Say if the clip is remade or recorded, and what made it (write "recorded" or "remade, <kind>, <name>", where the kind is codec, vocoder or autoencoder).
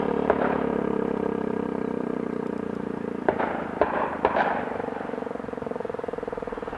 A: remade, vocoder, BigVGAN v2